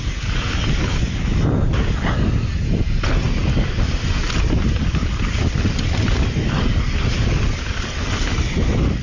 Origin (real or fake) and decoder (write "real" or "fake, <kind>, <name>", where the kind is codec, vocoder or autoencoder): real